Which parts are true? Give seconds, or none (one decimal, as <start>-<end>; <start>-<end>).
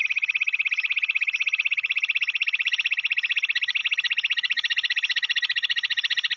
0.0-6.4